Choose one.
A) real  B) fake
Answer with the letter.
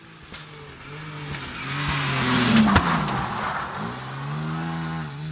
A